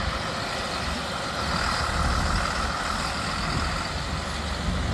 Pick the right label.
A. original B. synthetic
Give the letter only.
A